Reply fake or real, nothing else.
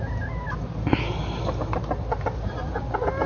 real